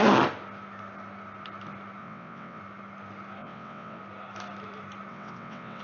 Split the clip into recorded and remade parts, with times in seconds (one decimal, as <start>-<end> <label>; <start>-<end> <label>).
0.0-2.0 recorded; 2.0-2.6 remade; 2.6-3.4 recorded; 3.4-4.0 remade; 4.0-5.1 recorded; 5.1-5.8 remade